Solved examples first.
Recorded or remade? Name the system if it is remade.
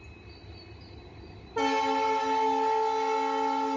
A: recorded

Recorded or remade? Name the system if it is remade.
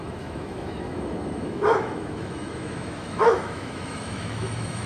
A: remade, autoencoder, DAC-VAE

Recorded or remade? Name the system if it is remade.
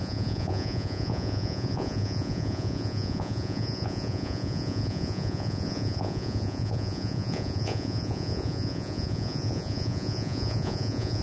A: remade, vocoder, Vocos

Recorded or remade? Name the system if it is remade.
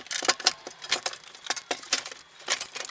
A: recorded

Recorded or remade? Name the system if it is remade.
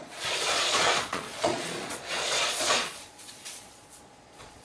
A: remade, vocoder, Vocos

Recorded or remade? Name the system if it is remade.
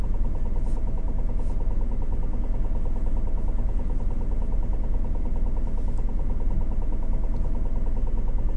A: recorded